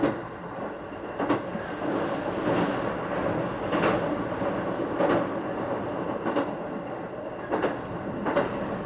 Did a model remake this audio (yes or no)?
no